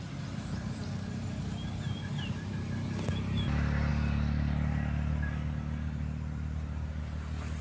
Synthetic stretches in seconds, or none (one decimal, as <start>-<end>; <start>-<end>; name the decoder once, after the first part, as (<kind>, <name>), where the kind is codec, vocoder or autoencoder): none